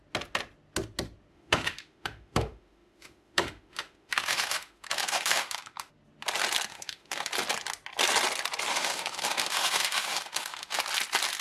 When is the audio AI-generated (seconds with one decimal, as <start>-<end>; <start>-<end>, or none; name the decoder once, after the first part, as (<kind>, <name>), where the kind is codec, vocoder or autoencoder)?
1.3-5.9 (autoencoder, DAC-VAE); 6.7-7.3; 8.7-10.8